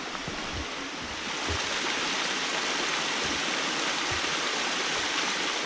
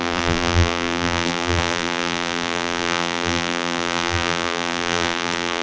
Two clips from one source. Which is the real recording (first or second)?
first